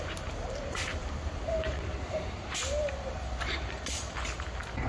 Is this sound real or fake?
fake